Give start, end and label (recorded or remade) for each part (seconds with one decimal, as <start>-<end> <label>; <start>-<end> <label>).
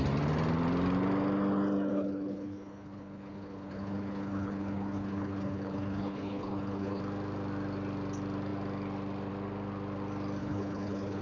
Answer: 0.0-1.9 recorded; 1.9-7.0 remade; 7.0-10.4 recorded; 10.4-11.2 remade